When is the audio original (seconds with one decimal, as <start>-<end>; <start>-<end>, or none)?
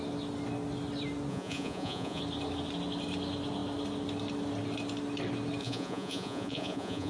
0.0-1.3; 2.2-5.6